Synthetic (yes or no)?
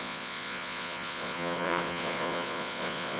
yes